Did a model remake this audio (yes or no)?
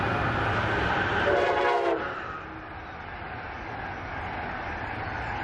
no